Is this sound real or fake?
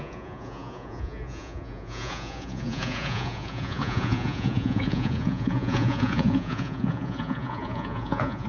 fake